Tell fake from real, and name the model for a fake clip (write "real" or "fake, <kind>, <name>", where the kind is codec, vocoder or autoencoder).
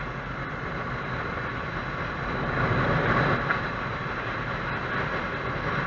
real